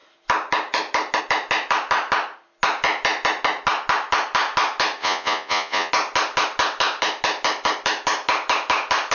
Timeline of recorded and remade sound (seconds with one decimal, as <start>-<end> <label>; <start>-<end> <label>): 0.0-5.0 recorded; 5.0-5.9 remade; 5.9-9.1 recorded